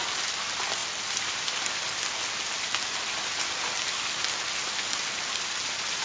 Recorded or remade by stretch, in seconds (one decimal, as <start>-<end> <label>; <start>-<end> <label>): 0.0-6.0 recorded